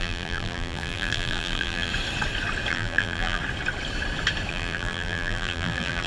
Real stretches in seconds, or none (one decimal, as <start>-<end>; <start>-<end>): 1.9-2.7; 3.4-4.5